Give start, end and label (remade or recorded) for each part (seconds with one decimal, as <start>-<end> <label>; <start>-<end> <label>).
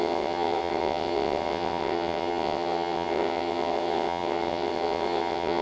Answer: 0.0-5.6 remade